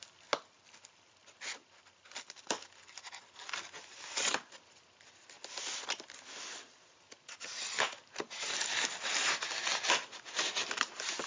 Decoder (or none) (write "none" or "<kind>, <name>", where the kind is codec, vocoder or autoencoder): none